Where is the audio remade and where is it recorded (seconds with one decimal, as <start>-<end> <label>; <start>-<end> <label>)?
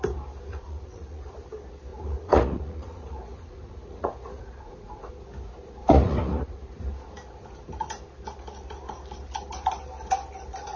0.0-0.5 recorded; 0.5-1.2 remade; 1.2-1.9 recorded; 1.9-5.1 remade; 5.1-5.8 recorded; 5.8-6.8 remade; 6.8-10.8 recorded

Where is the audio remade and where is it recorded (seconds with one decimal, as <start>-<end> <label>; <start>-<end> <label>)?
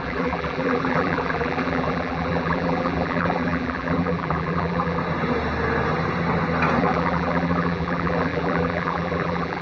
0.0-5.0 remade; 5.0-6.8 recorded; 6.8-9.6 remade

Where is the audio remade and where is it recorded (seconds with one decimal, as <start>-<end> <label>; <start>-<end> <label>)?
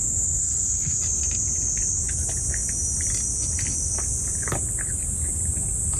0.0-0.4 recorded; 0.4-1.0 remade; 1.0-6.0 recorded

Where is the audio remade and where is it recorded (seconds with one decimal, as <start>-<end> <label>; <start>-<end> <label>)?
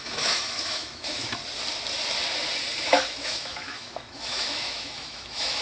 0.0-1.4 remade; 1.4-2.8 recorded; 2.8-5.6 remade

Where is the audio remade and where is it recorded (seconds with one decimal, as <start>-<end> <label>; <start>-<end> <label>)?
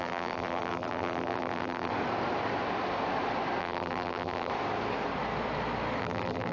0.0-1.9 remade; 1.9-3.6 recorded; 3.6-4.5 remade; 4.5-6.0 recorded; 6.0-6.5 remade